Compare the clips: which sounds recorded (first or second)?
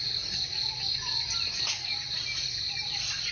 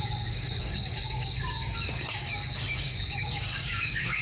first